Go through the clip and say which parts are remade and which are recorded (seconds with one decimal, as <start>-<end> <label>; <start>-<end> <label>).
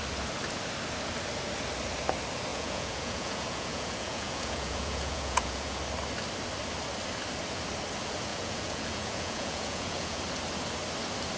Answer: 0.0-2.5 recorded; 2.5-5.8 remade; 5.8-8.3 recorded; 8.3-10.2 remade; 10.2-11.4 recorded